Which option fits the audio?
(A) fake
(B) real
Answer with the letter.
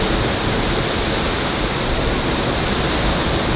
B